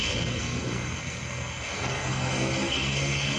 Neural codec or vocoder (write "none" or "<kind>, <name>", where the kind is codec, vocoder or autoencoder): codec, SNAC